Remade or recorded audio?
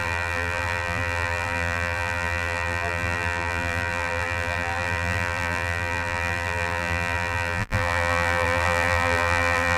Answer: remade